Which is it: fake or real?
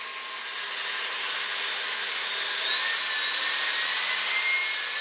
real